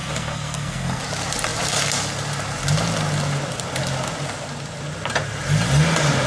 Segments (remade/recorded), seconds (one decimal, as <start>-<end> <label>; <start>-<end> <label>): 0.0-1.0 remade; 1.0-6.3 recorded